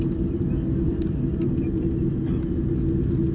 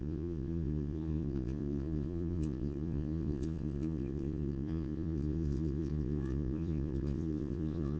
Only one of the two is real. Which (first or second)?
first